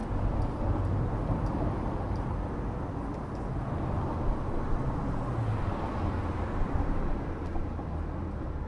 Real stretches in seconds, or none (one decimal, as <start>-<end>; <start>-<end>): 0.0-8.7